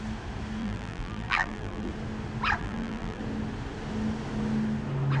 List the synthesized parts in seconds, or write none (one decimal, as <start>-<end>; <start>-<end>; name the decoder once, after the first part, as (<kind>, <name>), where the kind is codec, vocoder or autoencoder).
0.6-1.9 (vocoder, BigVGAN v2); 2.6-3.2